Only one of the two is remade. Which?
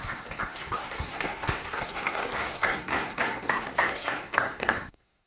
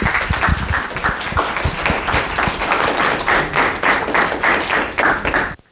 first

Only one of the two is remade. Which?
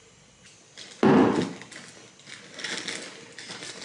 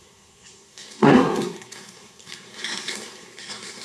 second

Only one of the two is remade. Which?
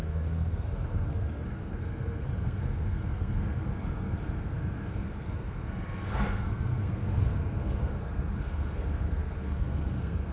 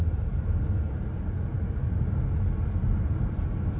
first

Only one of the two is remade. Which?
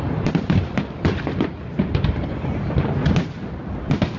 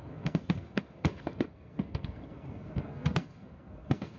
second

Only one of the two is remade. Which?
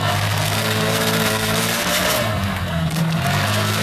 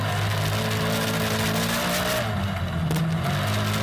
first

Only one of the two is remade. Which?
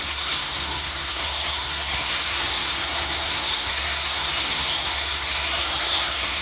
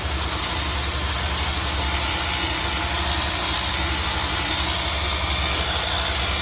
first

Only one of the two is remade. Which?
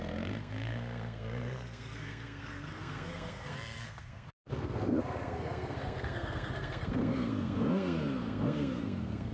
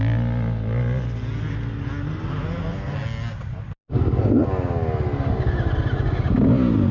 first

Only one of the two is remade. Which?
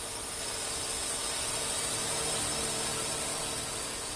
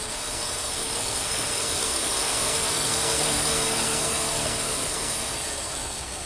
second